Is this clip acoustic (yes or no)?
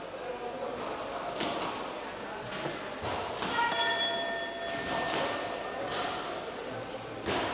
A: yes